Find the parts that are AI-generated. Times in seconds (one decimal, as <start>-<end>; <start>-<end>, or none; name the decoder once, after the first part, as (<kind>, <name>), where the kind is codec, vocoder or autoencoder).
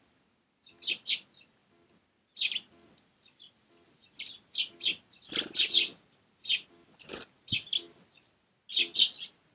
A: none